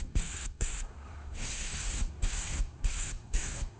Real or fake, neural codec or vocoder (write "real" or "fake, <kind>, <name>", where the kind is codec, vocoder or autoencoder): fake, codec, SNAC